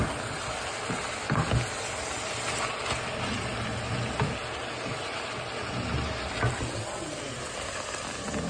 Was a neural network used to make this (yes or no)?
no